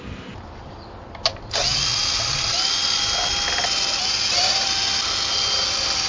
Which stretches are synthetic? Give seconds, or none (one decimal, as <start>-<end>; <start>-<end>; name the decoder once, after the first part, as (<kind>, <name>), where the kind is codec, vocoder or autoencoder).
none